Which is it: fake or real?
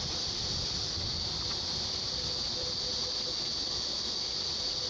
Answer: real